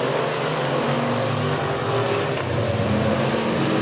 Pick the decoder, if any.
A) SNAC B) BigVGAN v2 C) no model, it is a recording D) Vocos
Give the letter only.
C